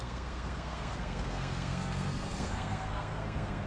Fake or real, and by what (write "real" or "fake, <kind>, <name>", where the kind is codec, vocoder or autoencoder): fake, codec, SNAC